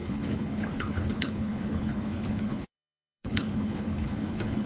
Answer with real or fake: fake